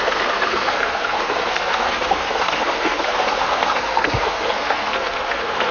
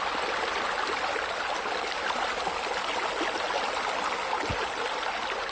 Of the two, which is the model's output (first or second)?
first